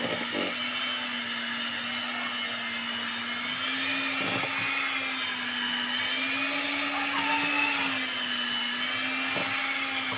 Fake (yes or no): no